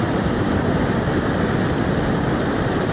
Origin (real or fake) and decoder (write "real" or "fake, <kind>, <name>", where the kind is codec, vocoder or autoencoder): fake, vocoder, BigVGAN v2